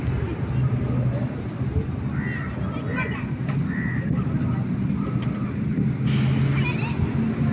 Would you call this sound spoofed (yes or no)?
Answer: no